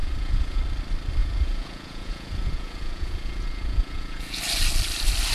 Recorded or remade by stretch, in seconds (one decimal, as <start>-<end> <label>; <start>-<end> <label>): 0.0-0.6 remade; 0.6-1.2 recorded; 1.2-4.4 remade; 4.4-5.3 recorded